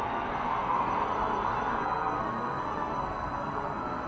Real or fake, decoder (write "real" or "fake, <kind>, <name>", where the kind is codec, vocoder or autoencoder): fake, codec, SNAC